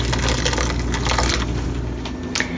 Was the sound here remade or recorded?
recorded